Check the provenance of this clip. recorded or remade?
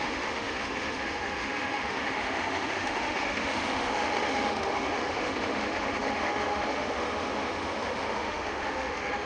remade